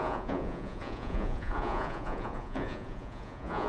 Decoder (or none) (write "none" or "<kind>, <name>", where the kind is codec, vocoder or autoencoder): vocoder, Vocos